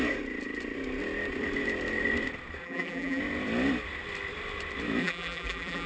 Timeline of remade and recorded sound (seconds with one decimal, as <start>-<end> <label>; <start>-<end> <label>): 0.0-2.6 recorded; 2.6-3.2 remade; 3.2-5.0 recorded; 5.0-5.9 remade